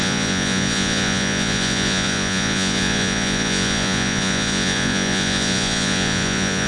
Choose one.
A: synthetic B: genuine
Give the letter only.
A